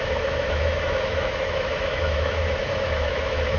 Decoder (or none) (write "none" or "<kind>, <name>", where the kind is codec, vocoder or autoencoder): autoencoder, DAC-VAE